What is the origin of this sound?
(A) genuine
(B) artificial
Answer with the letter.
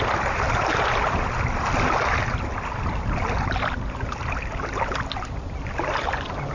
A